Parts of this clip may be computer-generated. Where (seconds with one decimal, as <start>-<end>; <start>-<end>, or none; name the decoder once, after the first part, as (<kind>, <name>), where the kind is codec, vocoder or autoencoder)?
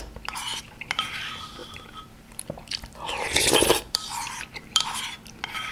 0.5-1.0 (vocoder, BigVGAN v2); 1.6-5.0